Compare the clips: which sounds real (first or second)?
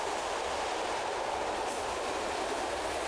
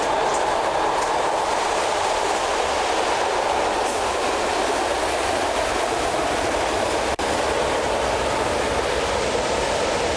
second